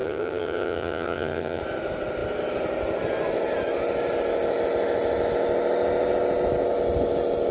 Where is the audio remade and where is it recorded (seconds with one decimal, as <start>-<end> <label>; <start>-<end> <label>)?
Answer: 0.0-1.6 remade; 1.6-7.5 recorded